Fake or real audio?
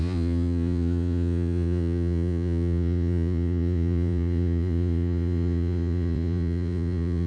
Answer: fake